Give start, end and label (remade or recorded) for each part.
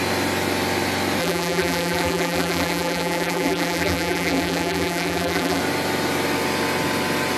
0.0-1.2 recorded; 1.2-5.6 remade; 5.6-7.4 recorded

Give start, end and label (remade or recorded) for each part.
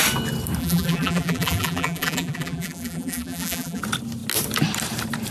0.0-0.6 recorded; 0.6-3.8 remade; 3.8-5.3 recorded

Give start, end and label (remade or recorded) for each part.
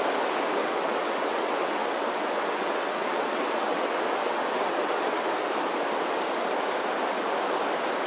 0.0-0.6 recorded; 0.6-5.3 remade; 5.3-8.1 recorded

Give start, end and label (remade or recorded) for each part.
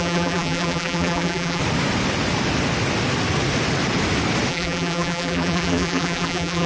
0.0-1.6 remade; 1.6-4.5 recorded; 4.5-6.7 remade